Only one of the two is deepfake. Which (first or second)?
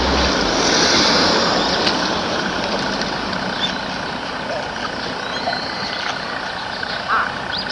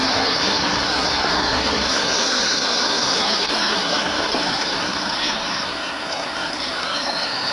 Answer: second